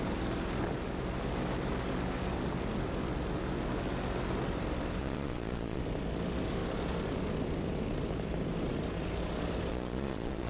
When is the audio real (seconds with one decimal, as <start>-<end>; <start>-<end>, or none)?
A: 0.0-5.0; 5.8-9.7